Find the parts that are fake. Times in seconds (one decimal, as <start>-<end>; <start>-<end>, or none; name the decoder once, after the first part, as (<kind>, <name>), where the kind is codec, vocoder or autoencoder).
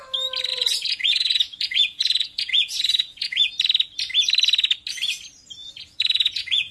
0.5-3.5 (vocoder, Vocos); 5.6-6.7